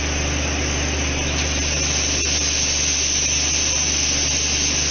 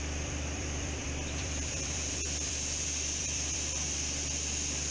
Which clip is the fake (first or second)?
second